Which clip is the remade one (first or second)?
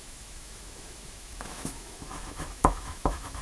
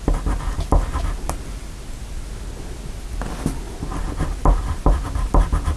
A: first